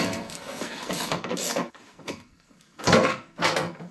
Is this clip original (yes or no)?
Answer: no